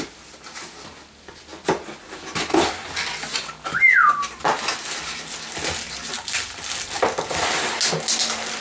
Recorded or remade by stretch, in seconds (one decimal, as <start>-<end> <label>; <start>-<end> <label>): 0.0-8.6 recorded